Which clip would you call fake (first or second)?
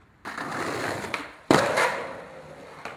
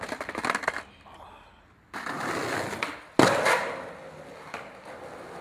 first